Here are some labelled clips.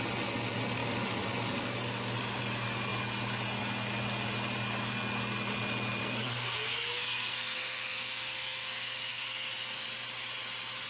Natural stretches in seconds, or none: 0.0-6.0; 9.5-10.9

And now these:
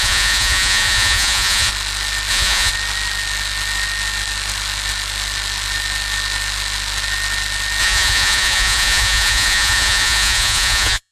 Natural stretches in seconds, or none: 1.7-2.3; 2.7-7.8

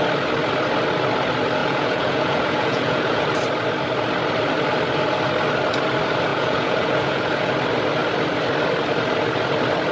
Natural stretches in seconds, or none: 0.0-1.6; 3.2-6.3; 7.5-9.9

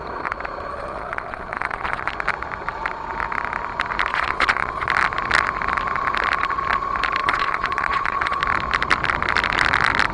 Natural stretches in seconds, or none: 0.0-0.7; 2.1-4.1; 4.9-7.2; 8.4-10.1

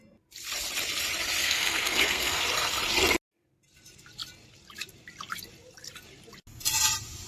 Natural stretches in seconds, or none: 0.0-1.4; 2.4-7.3

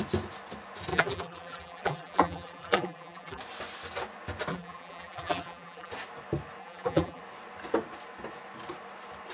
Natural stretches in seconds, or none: 0.0-0.9; 3.4-4.5; 5.9-6.6; 7.2-9.3

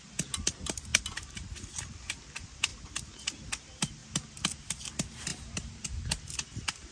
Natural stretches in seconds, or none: 0.0-5.3; 6.0-6.9

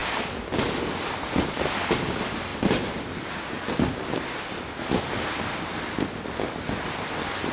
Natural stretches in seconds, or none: 0.0-7.5